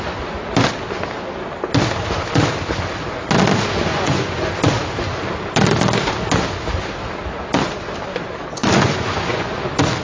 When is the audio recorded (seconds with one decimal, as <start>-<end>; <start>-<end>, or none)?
0.0-3.9; 4.5-8.6; 9.5-10.0